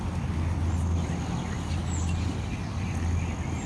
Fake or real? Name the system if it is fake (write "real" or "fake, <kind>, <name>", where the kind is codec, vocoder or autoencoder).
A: real